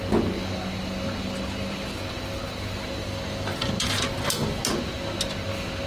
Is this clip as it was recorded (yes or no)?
yes